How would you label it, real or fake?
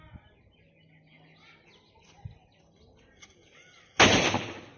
real